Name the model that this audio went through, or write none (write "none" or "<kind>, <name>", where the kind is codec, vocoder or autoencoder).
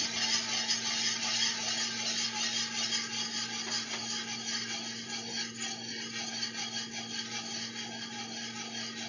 none